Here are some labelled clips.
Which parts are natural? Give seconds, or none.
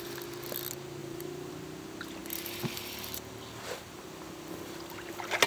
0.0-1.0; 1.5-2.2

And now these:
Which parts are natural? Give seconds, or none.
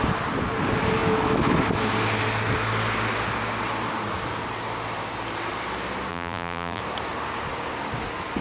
0.0-6.1; 6.8-8.4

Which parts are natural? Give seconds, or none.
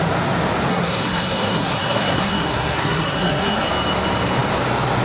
0.0-0.7; 3.7-5.0